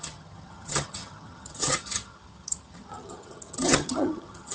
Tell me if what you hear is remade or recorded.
remade